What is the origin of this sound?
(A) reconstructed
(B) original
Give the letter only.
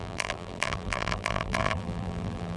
A